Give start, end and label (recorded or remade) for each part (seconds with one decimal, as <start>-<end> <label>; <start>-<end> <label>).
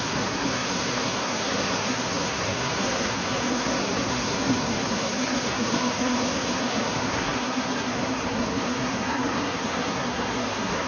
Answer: 0.0-10.9 remade